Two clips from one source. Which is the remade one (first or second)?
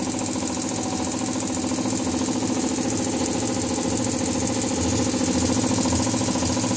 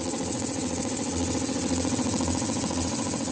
second